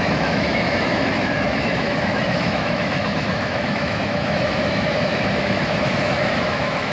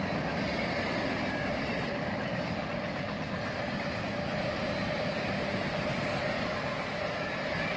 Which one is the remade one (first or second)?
first